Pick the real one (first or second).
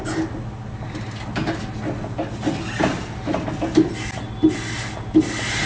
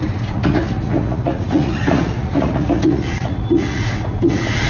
first